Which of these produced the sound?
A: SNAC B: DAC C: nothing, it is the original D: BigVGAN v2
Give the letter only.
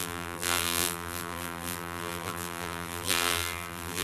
D